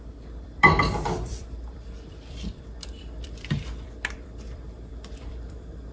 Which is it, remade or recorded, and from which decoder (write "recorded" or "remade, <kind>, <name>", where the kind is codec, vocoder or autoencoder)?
remade, vocoder, BigVGAN v2